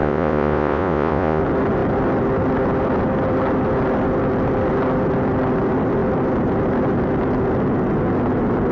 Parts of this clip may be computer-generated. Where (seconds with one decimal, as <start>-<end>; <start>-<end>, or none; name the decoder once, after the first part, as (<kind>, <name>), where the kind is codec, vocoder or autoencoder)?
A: 0.0-1.4 (vocoder, Vocos)